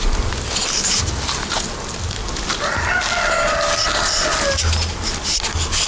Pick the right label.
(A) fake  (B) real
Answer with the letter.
B